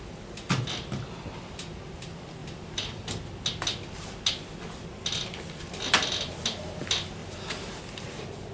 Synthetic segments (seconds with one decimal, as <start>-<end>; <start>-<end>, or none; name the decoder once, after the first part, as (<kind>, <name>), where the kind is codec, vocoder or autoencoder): 2.4-3.2 (vocoder, BigVGAN v2); 7.2-8.0